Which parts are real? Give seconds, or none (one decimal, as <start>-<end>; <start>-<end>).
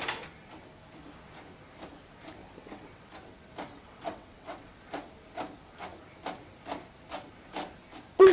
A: 0.0-2.6; 3.1-3.7; 4.8-8.3